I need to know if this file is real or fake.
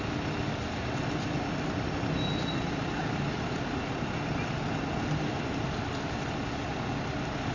real